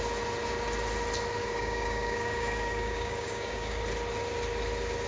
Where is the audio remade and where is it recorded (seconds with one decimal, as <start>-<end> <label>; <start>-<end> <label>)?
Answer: 0.0-1.4 recorded; 1.4-3.8 remade; 3.8-5.1 recorded